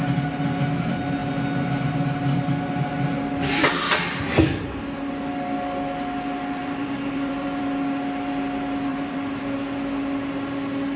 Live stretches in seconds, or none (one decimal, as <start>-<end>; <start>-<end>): 0.0-6.6; 7.6-8.9; 9.4-11.0